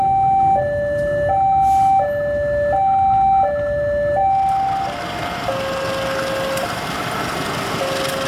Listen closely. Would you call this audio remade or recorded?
recorded